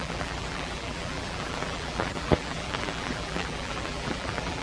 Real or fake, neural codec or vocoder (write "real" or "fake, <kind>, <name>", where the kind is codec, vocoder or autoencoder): fake, vocoder, BigVGAN v2